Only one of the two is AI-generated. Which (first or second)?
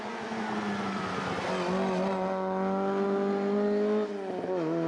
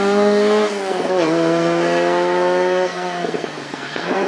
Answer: second